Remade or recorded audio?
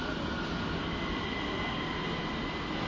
recorded